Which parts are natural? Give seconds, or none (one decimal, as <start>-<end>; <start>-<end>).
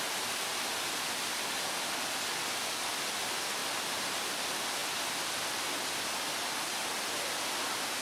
0.0-8.0